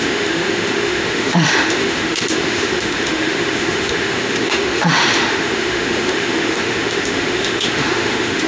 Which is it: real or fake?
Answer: fake